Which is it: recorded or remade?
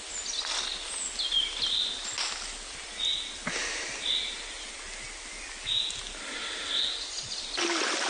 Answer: recorded